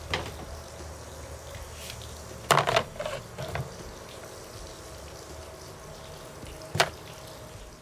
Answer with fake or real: real